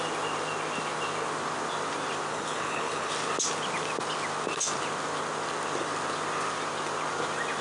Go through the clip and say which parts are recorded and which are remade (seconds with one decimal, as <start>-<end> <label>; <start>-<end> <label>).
0.0-2.3 recorded; 2.3-3.1 remade; 3.1-7.6 recorded